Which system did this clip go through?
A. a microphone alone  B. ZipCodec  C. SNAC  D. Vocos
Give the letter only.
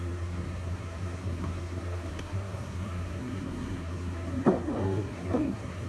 C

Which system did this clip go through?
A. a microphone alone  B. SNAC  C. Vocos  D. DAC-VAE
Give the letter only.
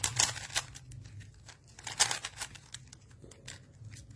A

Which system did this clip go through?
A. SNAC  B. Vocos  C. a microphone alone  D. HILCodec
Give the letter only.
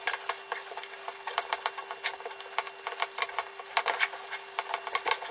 C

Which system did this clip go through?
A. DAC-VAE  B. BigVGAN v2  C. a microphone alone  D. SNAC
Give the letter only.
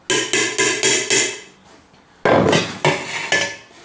C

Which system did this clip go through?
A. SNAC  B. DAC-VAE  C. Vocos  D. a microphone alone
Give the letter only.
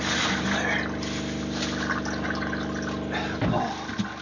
D